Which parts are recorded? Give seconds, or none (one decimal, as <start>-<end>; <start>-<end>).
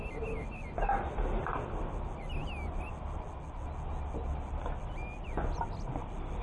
0.0-6.4